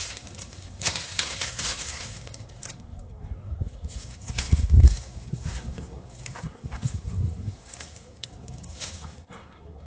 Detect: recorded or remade remade